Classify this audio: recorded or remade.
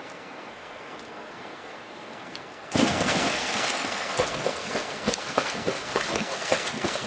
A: remade